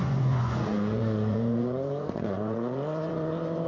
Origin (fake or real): fake